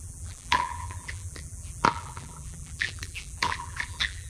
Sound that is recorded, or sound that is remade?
remade